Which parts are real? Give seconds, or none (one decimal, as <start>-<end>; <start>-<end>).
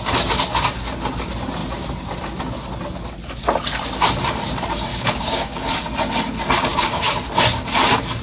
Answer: 0.0-4.9; 5.7-6.7; 7.2-8.2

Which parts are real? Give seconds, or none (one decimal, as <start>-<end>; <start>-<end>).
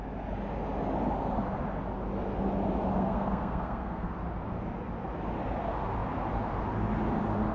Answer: 0.0-3.0; 4.1-7.5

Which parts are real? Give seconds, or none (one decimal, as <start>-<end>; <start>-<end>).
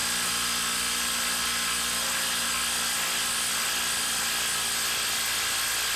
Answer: 0.0-6.0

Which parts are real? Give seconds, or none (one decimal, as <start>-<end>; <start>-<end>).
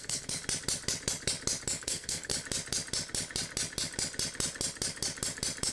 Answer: 0.4-1.8; 2.3-5.7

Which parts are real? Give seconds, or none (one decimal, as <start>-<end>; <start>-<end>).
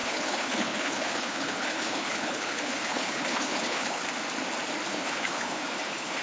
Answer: 4.0-4.9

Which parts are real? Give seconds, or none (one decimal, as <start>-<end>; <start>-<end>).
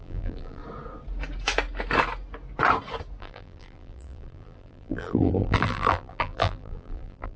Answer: 0.6-3.2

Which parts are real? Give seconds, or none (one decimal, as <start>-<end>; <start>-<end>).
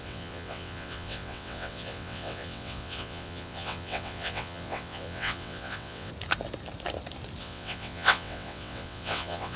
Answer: 6.1-7.4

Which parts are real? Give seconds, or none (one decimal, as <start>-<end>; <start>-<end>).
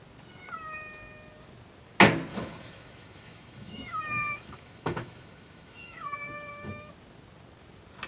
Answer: 0.0-2.3; 6.9-8.1